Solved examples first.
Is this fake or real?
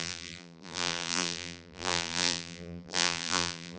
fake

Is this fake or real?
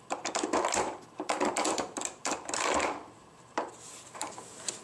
fake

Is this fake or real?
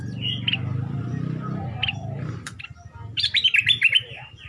real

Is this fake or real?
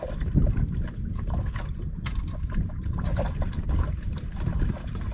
fake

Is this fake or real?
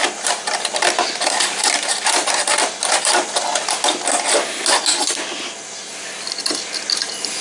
real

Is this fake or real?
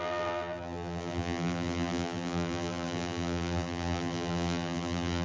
fake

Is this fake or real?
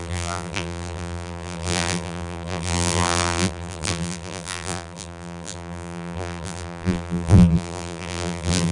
fake